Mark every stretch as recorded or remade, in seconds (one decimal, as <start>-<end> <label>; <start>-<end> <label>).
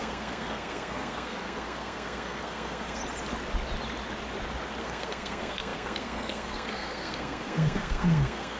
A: 0.0-3.0 remade; 3.0-4.8 recorded; 4.8-8.6 remade